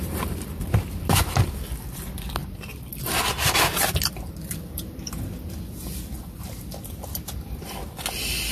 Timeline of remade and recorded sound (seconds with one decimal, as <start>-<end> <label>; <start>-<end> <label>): 0.0-8.5 remade